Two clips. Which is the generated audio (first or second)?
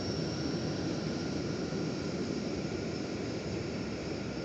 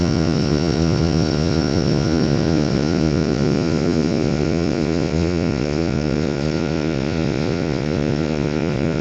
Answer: second